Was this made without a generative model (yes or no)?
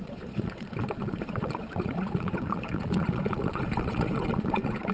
no